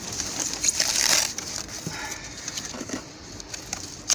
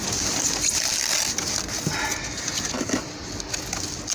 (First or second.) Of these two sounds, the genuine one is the second